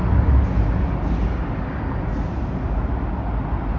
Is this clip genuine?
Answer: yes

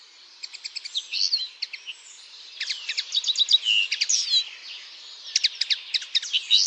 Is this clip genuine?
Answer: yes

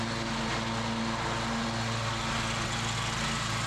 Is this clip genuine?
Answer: yes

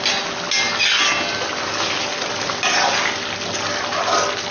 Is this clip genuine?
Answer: yes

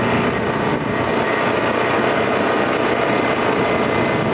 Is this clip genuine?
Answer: yes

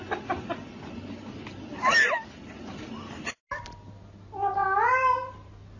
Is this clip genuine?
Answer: yes